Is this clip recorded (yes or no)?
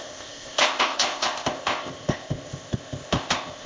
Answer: no